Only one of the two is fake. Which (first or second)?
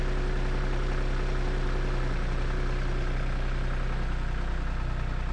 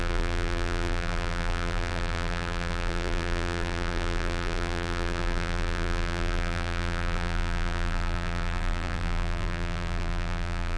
second